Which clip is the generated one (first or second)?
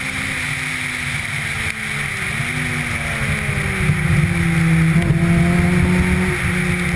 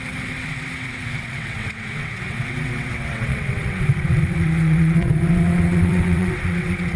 second